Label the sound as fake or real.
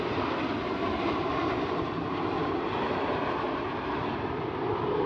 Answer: real